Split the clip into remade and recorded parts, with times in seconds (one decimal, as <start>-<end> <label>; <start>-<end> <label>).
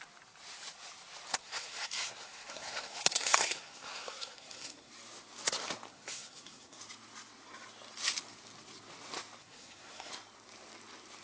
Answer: 0.0-1.4 recorded; 1.4-4.9 remade; 4.9-5.9 recorded; 5.9-6.8 remade; 6.8-9.4 recorded; 9.4-10.1 remade; 10.1-11.2 recorded